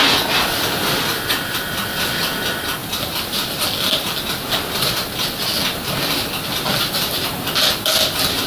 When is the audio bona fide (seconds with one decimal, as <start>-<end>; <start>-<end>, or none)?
0.0-8.5